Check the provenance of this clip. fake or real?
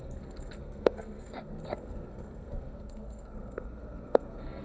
fake